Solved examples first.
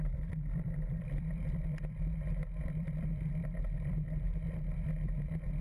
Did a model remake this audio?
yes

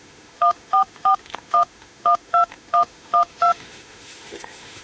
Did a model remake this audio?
yes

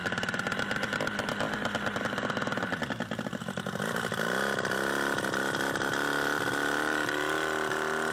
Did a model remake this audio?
no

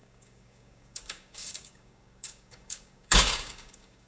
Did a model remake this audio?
yes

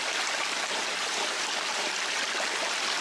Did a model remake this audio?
no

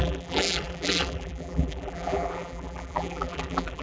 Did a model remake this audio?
yes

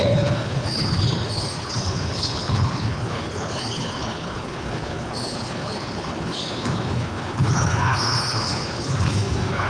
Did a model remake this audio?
yes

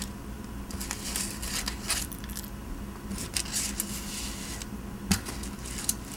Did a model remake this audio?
no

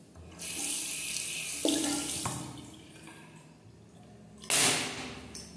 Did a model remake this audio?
no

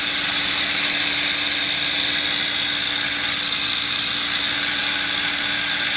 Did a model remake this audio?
no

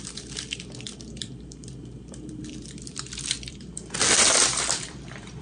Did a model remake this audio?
yes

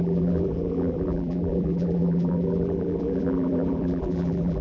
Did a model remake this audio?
yes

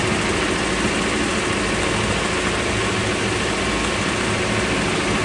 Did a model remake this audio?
no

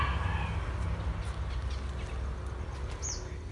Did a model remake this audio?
no